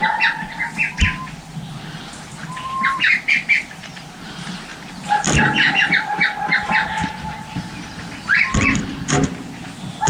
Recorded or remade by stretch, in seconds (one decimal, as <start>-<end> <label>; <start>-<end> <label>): 0.0-1.5 recorded; 1.5-4.3 remade; 4.3-4.7 recorded; 4.7-8.9 remade; 8.9-10.1 recorded